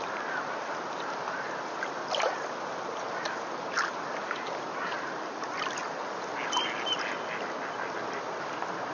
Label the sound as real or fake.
real